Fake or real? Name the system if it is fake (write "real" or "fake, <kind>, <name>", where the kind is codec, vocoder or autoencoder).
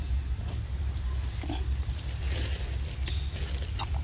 real